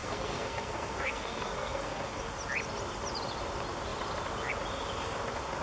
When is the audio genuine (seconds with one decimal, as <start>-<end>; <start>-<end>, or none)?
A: 2.2-5.6